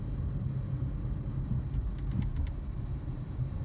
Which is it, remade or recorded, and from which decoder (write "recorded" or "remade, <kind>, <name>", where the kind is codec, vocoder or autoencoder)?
recorded